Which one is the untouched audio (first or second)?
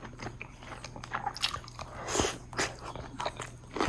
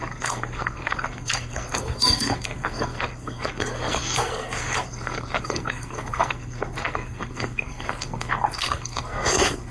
first